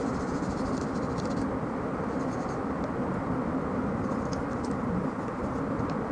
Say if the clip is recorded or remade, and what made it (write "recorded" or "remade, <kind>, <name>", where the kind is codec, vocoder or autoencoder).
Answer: remade, vocoder, BigVGAN v2